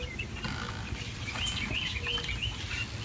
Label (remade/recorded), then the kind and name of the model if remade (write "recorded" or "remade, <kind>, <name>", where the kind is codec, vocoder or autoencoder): recorded